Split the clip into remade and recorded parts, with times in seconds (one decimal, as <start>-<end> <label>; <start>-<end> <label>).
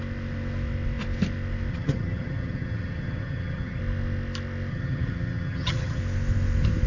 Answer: 0.0-1.7 recorded; 1.7-3.8 remade; 3.8-4.7 recorded; 4.7-6.0 remade; 6.0-6.9 recorded